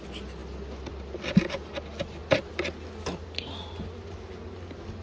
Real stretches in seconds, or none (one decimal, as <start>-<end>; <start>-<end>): 0.0-5.0